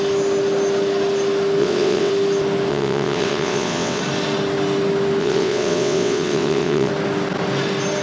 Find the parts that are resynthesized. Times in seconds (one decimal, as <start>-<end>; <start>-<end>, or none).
1.6-2.1; 2.7-4.0; 5.2-6.9